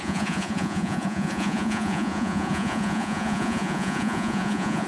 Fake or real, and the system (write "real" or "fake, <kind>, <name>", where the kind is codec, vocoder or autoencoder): fake, vocoder, Vocos